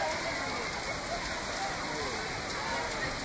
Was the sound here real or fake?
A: real